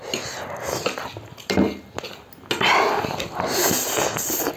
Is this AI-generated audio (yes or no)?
no